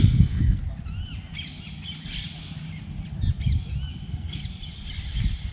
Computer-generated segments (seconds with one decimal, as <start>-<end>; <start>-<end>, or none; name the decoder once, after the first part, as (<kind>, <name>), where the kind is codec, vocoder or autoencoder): 0.0-0.6 (codec, SNAC); 3.9-4.4